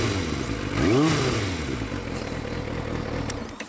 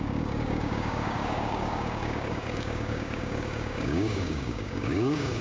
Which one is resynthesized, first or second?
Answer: second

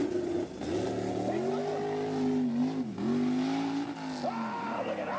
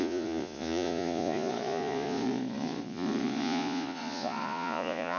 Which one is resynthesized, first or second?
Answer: second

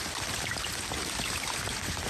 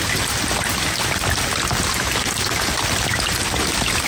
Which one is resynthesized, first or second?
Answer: first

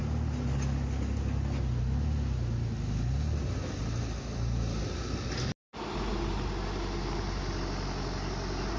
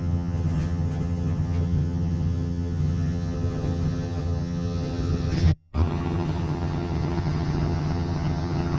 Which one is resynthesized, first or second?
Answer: second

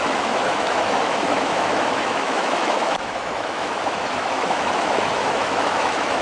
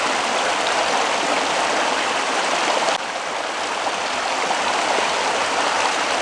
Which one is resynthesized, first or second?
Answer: first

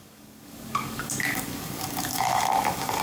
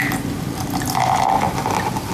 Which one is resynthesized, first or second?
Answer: first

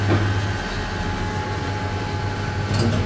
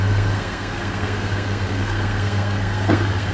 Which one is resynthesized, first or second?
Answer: second